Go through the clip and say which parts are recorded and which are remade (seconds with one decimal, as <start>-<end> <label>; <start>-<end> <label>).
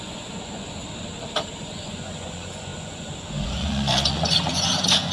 0.0-0.8 remade; 0.8-1.6 recorded; 1.6-5.1 remade